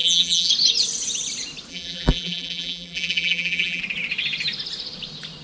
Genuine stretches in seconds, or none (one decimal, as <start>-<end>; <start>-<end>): 0.5-1.7; 3.8-5.4